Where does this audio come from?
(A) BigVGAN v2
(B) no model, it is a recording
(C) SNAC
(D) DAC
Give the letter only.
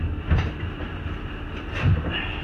A